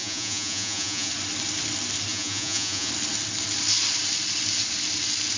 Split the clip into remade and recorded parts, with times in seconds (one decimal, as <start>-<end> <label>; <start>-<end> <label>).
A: 0.0-1.1 remade; 1.1-2.1 recorded; 2.1-2.9 remade; 2.9-5.4 recorded